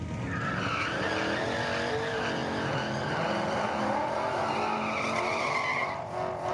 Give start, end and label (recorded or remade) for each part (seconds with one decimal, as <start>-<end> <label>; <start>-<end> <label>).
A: 0.0-6.5 recorded